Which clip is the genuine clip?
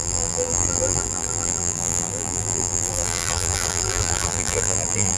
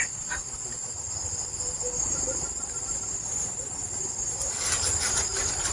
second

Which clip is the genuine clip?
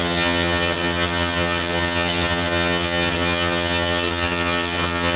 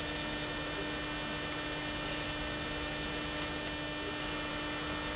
second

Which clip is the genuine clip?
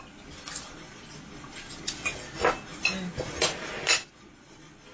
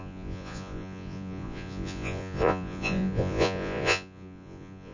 first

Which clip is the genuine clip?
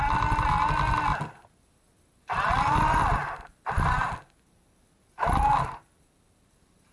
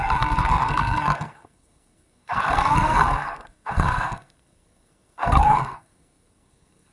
first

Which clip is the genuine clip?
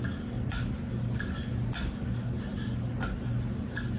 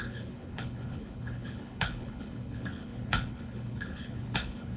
first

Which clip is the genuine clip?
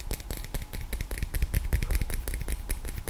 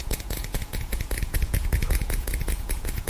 first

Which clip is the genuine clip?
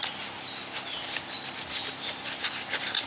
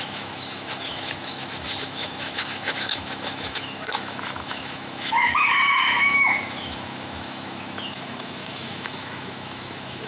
first